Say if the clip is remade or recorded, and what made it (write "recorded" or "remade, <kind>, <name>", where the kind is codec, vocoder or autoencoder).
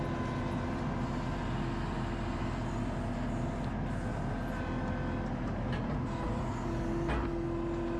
recorded